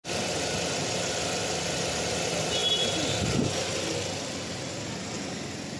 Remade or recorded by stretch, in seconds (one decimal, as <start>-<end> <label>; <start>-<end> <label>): 0.0-5.8 recorded